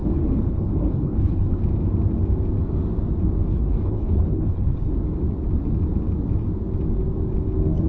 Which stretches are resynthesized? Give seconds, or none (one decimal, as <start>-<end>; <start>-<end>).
0.0-1.6; 3.5-4.9